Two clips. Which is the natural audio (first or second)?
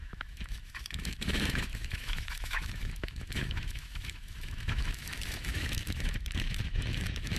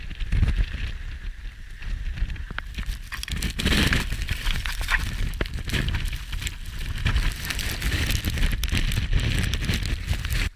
second